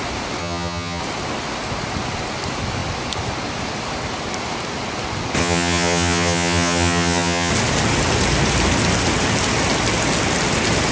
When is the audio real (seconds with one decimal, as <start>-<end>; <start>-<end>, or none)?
0.0-0.4; 1.0-5.4; 7.5-10.9